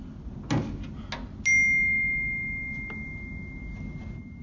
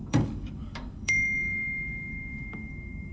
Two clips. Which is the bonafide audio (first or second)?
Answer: first